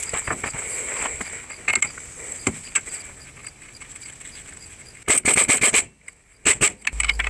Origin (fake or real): real